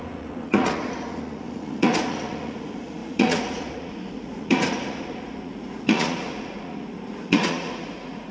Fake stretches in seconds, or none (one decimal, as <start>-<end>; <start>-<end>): 0.0-8.3